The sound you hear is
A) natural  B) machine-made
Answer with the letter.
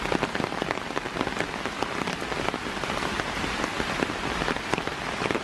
A